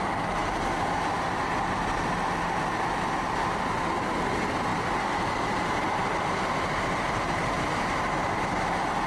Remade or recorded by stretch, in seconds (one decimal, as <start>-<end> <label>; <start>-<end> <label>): 0.0-0.4 recorded; 0.4-3.6 remade; 3.6-4.7 recorded; 4.7-8.4 remade; 8.4-9.1 recorded